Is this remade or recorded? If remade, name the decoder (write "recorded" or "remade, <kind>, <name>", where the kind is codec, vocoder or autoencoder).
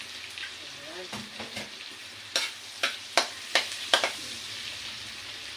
remade, vocoder, BigVGAN v2